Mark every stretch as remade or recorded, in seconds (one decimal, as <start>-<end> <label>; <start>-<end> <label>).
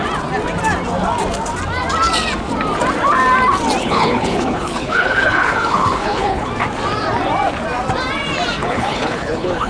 0.0-3.8 recorded; 3.8-6.5 remade; 6.5-8.6 recorded; 8.6-9.7 remade